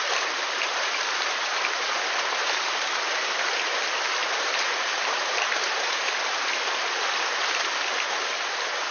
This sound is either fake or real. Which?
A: real